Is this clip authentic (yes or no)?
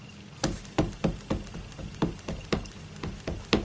yes